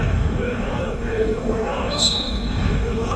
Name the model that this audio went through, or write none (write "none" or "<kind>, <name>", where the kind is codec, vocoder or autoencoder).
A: codec, DAC